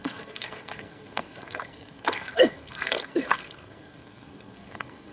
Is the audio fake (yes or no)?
yes